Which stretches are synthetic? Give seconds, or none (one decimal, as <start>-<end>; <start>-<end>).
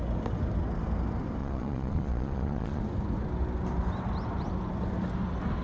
1.4-2.8